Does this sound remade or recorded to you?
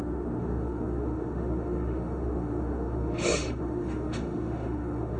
remade